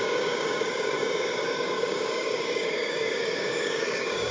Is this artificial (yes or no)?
yes